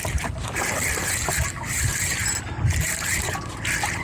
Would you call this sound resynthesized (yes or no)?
no